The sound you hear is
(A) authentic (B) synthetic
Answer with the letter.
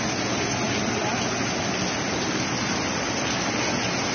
A